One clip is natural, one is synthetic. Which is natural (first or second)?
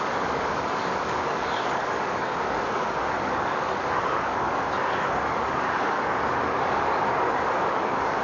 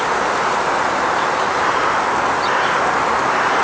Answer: second